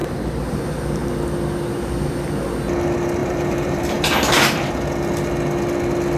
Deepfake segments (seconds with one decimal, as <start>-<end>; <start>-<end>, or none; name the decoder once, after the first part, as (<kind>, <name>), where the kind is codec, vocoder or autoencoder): 0.0-0.6 (vocoder, BigVGAN v2); 3.2-4.7